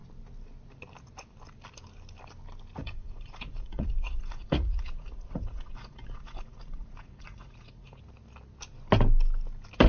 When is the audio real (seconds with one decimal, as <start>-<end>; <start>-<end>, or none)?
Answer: 0.0-2.8; 8.0-9.9